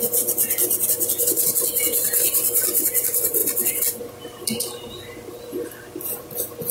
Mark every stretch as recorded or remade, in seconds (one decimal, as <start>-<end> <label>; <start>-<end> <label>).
0.0-6.7 recorded